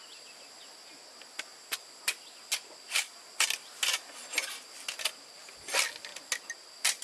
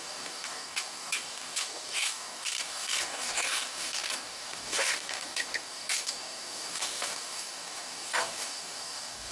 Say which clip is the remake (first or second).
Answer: second